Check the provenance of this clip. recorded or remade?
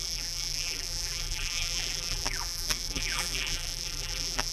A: remade